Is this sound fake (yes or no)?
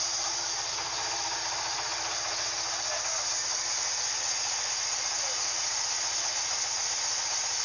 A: no